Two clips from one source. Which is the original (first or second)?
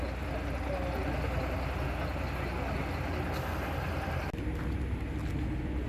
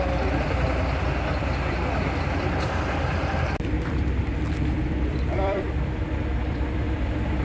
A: first